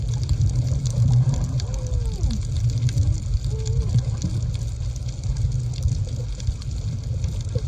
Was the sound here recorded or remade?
recorded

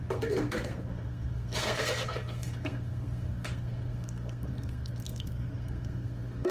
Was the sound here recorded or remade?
remade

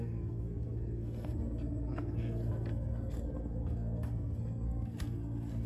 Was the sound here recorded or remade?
remade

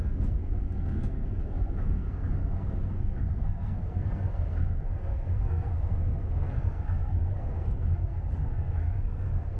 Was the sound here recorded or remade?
remade